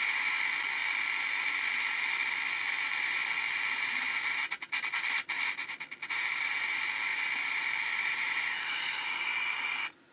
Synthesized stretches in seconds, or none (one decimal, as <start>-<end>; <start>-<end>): none